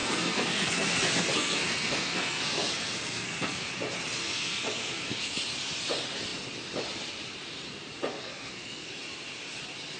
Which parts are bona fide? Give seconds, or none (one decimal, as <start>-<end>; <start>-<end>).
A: 3.7-4.2; 5.3-8.1; 8.9-10.0